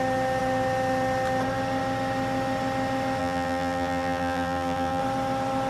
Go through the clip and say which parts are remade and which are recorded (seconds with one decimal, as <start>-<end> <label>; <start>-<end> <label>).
0.0-3.2 recorded; 3.2-5.0 remade; 5.0-5.7 recorded